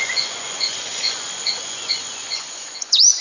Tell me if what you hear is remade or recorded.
remade